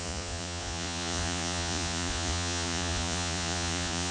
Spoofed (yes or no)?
yes